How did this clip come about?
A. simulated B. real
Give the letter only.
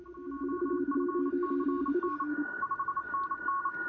B